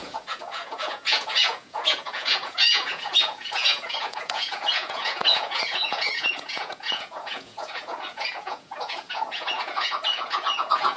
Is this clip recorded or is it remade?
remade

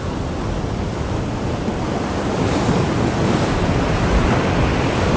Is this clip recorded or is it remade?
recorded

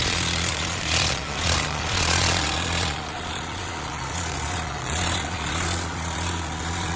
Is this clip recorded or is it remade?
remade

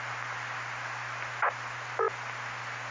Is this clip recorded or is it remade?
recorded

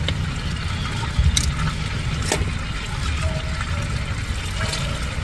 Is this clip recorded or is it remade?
recorded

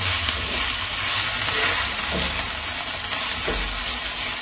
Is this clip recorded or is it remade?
recorded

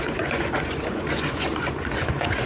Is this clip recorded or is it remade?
remade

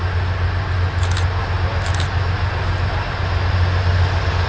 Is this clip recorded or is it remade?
recorded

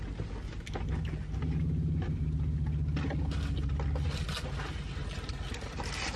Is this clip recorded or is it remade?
recorded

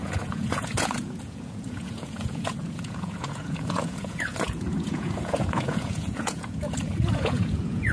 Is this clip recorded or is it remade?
remade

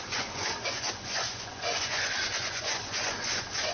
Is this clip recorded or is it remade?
remade